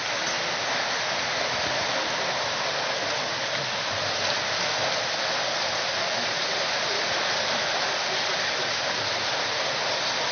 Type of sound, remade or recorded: recorded